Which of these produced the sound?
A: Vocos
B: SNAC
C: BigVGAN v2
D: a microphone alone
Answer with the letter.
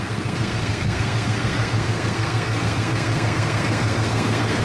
B